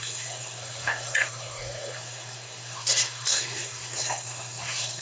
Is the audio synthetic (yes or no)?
yes